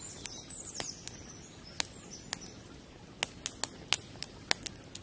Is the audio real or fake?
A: real